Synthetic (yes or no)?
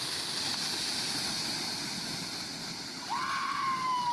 no